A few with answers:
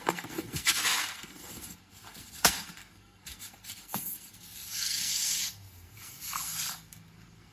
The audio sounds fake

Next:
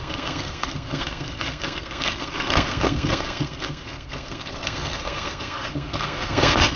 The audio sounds fake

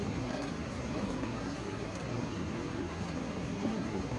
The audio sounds fake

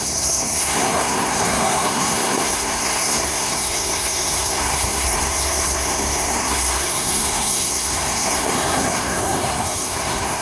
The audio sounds fake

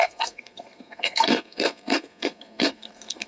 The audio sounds fake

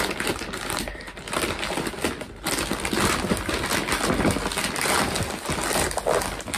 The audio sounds real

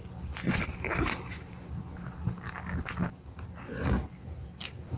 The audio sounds real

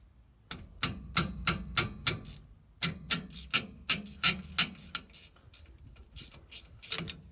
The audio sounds real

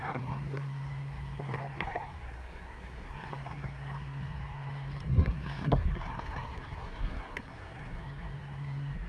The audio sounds fake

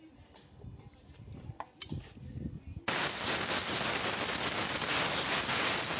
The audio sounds real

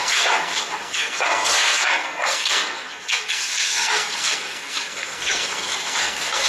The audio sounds fake